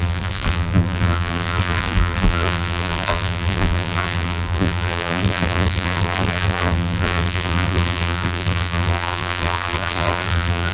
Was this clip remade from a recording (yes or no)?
yes